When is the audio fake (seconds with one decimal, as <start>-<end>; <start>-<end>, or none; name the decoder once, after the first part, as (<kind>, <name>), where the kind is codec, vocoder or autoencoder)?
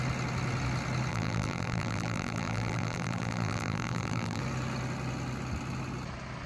1.1-4.4 (vocoder, BigVGAN v2)